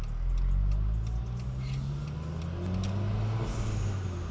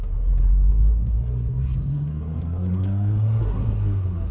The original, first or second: first